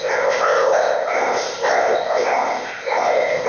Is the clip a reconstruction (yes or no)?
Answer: yes